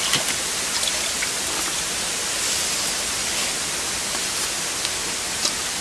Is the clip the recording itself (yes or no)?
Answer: yes